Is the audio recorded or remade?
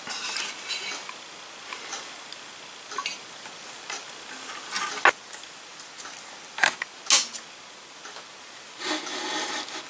recorded